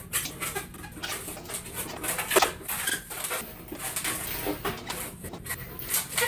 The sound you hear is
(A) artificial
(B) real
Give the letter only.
B